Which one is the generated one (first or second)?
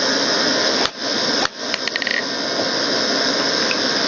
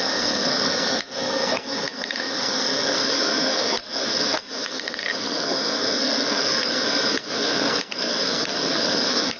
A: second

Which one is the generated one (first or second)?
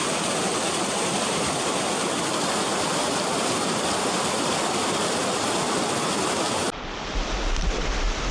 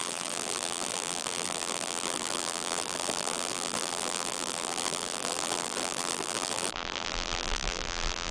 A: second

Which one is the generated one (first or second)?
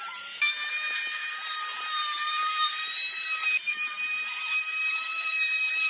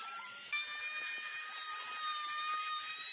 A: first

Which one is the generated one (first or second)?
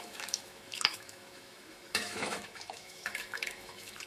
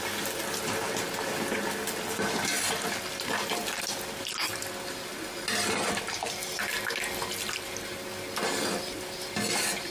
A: first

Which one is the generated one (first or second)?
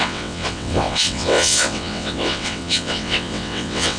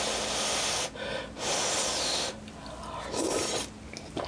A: first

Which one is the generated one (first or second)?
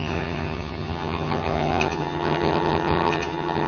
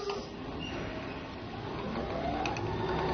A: first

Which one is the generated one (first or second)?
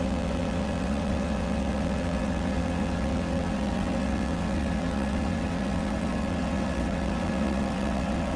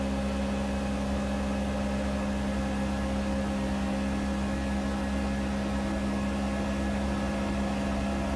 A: first